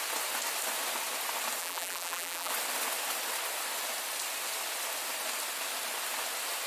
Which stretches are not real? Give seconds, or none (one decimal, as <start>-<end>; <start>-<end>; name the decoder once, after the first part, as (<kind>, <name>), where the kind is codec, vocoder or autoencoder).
1.6-2.5 (vocoder, BigVGAN v2)